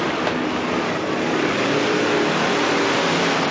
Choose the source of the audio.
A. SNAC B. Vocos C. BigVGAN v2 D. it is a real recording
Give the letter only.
D